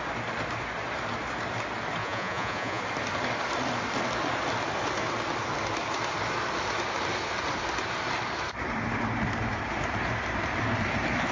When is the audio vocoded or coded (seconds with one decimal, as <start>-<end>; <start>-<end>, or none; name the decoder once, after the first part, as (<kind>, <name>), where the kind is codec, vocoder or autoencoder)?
2.0-2.8 (vocoder, Vocos)